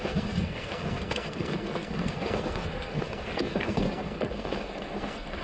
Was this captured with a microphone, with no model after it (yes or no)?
no